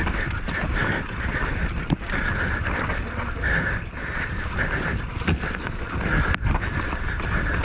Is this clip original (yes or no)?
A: no